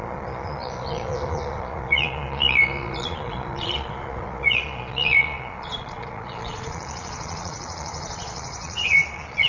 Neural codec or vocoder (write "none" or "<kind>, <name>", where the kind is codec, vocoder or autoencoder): vocoder, Vocos